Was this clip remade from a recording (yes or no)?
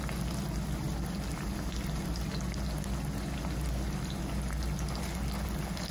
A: no